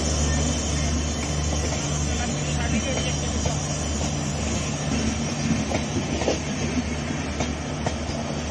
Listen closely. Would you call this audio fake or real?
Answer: real